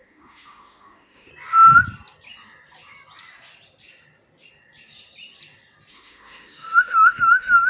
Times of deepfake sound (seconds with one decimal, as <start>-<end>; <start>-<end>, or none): 0.0-1.3; 5.9-7.7

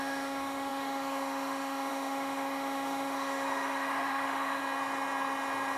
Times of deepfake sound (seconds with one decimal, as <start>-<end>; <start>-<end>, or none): 0.0-4.6

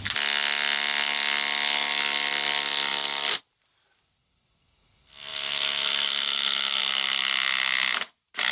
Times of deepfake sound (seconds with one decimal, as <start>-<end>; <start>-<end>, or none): 5.3-6.8